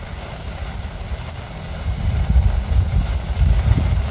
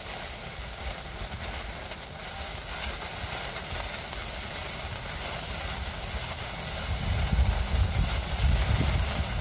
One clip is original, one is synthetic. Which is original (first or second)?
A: second